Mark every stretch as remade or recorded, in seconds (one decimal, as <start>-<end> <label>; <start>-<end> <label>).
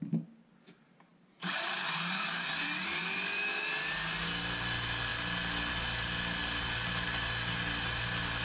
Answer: 0.0-8.4 recorded